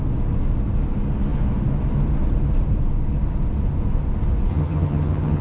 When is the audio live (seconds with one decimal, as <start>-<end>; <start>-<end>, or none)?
0.0-4.5